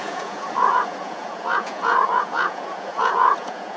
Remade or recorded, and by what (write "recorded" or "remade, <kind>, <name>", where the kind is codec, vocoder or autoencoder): remade, vocoder, Vocos